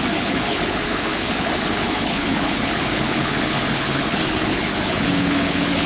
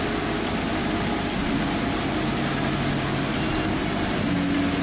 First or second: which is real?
second